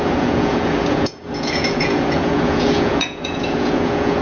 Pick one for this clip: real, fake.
fake